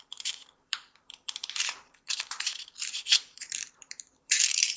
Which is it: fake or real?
fake